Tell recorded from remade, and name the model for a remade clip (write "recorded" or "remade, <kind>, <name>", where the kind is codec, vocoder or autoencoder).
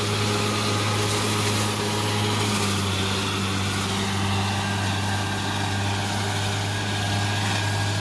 recorded